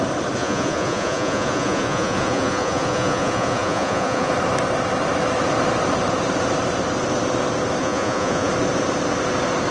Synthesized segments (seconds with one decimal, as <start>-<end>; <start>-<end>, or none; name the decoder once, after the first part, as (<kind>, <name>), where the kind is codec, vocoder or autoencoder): 0.4-4.3 (vocoder, Vocos); 7.8-8.5